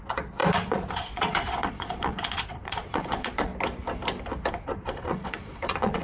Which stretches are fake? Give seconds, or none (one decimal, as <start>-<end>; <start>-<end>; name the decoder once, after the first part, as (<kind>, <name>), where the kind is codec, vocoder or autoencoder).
0.0-3.5 (vocoder, Vocos); 4.5-6.0